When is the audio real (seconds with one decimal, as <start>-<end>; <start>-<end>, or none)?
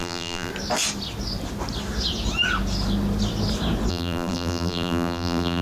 0.5-3.9